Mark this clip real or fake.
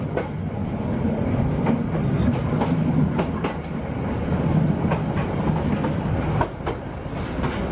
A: real